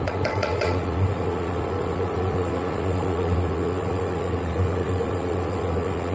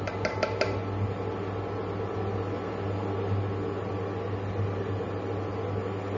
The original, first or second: second